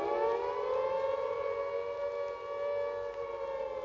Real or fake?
real